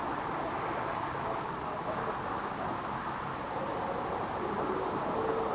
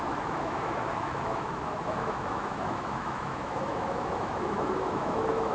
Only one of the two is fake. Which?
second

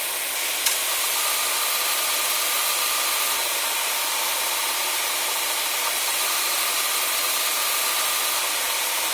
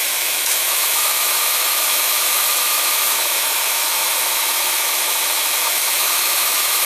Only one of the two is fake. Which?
second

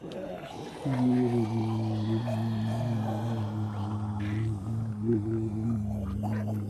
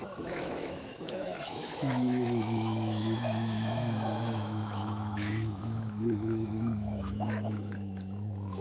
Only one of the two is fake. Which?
second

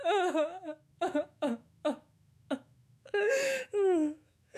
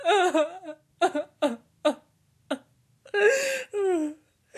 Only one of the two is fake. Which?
first